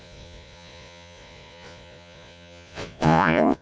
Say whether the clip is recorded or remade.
remade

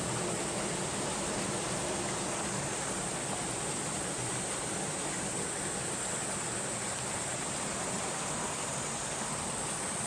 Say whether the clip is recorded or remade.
recorded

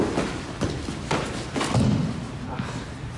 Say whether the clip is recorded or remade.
recorded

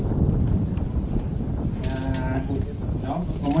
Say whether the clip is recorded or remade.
recorded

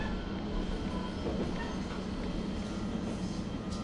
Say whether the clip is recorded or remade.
recorded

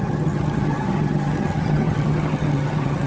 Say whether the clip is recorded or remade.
remade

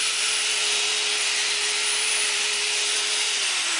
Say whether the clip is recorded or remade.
remade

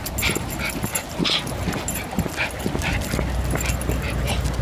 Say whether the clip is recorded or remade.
recorded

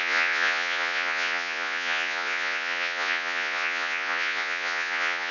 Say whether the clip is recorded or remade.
remade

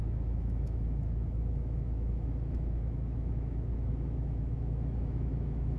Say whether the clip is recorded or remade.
remade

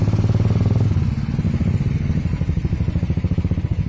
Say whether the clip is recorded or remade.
recorded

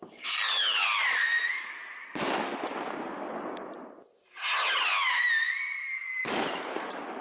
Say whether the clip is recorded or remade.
recorded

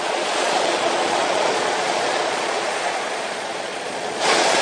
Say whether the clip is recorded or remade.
remade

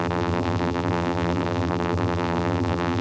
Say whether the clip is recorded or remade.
remade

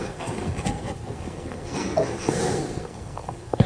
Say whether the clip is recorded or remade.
remade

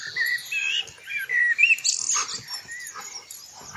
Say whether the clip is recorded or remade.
recorded